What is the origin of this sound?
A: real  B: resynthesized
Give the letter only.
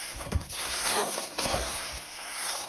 B